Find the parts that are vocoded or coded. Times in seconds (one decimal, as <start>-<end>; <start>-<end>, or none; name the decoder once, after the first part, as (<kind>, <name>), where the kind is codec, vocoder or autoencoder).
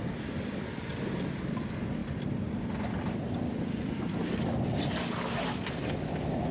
none